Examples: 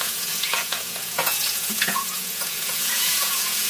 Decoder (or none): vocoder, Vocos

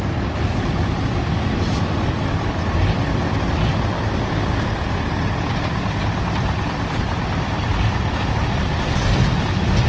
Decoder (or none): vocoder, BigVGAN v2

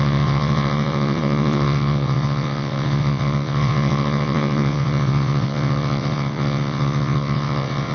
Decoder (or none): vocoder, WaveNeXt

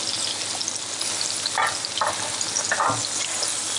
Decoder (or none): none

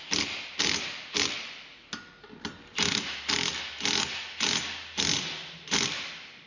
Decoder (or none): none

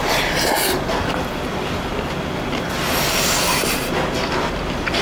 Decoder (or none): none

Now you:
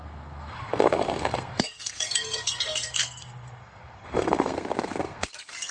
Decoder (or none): codec, SNAC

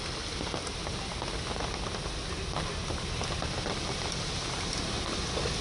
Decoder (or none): none